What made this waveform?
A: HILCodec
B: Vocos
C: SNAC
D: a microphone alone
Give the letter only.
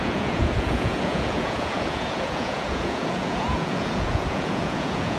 B